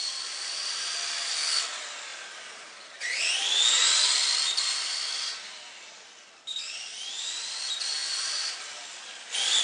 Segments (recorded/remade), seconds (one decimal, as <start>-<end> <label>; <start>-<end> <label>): 0.0-9.6 recorded